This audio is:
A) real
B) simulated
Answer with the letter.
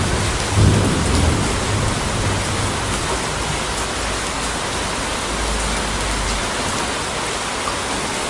A